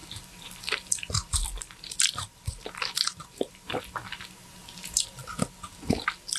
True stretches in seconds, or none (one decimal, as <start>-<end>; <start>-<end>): 3.8-6.4